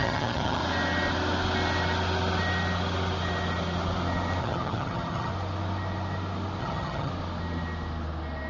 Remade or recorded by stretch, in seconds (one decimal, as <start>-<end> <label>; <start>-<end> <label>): 0.0-0.6 remade; 0.6-4.4 recorded; 4.4-5.3 remade; 5.3-6.6 recorded; 6.6-7.1 remade; 7.1-8.5 recorded